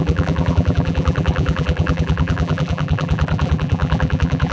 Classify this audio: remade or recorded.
remade